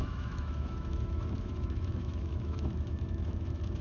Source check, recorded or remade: remade